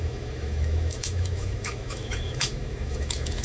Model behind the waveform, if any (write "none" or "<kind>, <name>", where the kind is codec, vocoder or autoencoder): autoencoder, DAC-VAE